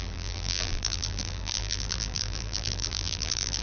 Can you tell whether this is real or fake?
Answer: fake